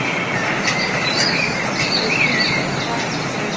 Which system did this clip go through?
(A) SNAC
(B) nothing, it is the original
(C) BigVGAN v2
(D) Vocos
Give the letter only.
B